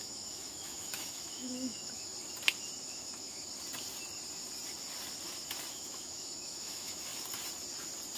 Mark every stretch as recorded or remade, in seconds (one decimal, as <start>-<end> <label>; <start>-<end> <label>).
0.0-2.1 remade; 2.1-2.8 recorded; 2.8-3.4 remade; 3.4-5.7 recorded; 5.7-7.1 remade; 7.1-8.2 recorded